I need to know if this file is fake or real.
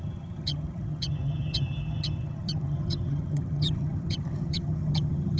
fake